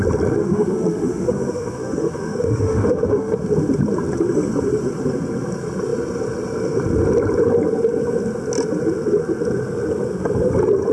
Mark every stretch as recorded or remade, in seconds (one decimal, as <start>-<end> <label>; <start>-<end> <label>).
0.0-0.4 recorded; 0.4-3.3 remade; 3.3-10.9 recorded